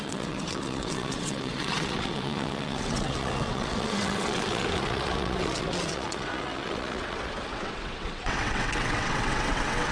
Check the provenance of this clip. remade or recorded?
remade